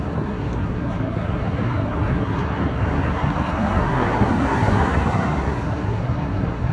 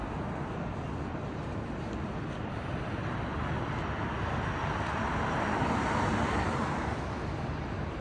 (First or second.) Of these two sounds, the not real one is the first